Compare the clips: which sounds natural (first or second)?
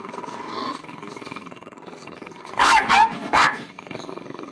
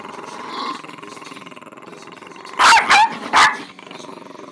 second